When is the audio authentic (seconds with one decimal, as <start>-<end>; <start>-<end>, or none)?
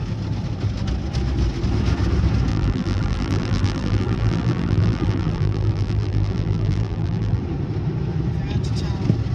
0.0-2.5; 7.4-9.3